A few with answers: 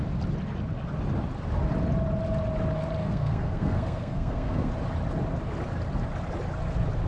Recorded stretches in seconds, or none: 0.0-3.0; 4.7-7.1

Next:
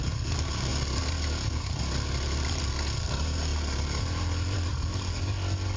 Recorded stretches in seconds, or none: 0.0-5.8